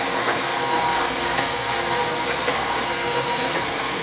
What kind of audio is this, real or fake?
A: fake